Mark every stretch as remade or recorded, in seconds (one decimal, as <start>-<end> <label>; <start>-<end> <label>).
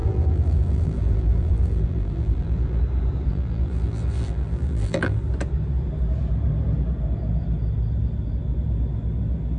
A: 0.0-2.8 remade; 2.8-3.3 recorded; 3.3-5.2 remade; 5.2-9.6 recorded